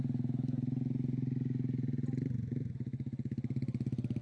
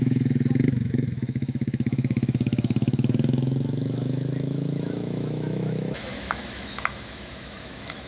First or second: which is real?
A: first